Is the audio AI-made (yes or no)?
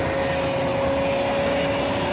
no